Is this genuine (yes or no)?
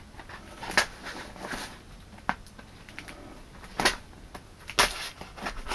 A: yes